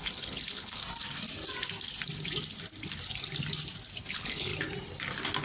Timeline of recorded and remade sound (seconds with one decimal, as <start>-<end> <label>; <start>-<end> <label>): 0.0-0.8 remade; 0.8-4.0 recorded; 4.0-4.5 remade; 4.5-5.4 recorded